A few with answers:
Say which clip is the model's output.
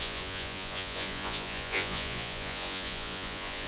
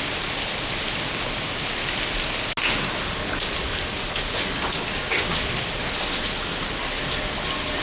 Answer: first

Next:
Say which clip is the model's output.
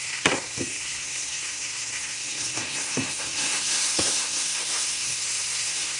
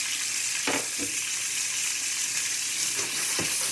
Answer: first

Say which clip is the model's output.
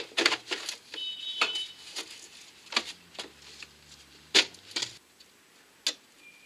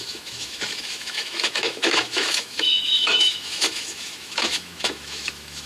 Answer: second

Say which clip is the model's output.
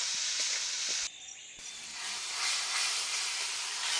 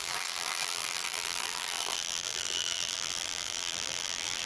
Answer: second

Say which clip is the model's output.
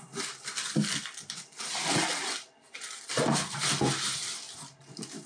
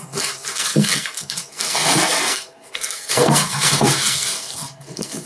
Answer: second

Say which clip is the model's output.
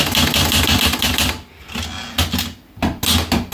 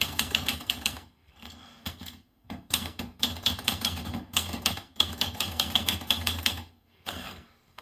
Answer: second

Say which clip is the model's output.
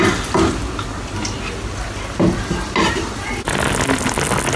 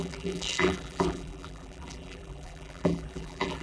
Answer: second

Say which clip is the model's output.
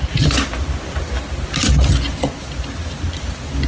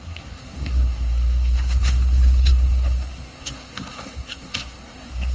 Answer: second